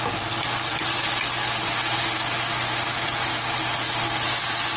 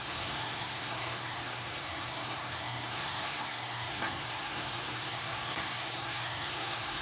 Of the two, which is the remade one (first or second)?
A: second